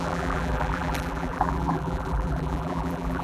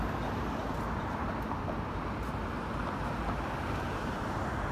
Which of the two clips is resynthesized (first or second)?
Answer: first